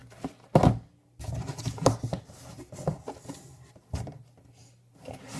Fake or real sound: real